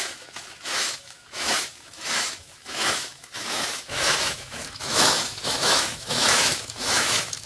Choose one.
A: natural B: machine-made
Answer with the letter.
B